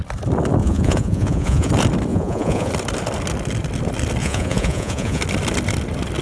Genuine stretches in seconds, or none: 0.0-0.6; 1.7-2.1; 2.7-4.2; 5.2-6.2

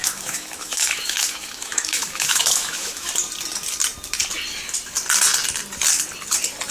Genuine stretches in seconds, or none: 3.1-6.7

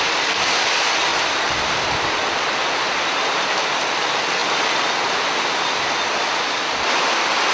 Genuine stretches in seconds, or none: 0.0-7.5